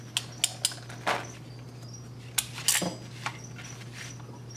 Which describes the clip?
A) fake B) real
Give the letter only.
B